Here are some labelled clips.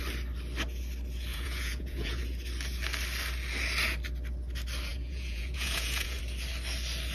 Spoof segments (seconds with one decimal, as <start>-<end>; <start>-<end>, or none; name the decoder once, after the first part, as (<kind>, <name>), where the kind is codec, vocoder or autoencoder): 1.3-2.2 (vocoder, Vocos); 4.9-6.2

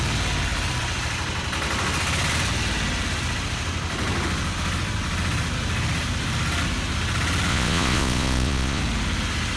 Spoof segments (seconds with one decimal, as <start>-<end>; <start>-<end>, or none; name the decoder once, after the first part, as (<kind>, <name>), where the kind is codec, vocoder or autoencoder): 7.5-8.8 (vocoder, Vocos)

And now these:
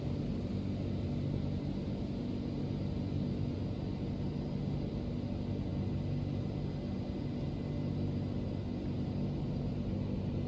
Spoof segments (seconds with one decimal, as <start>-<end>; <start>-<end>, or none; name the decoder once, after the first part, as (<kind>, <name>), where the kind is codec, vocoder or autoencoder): none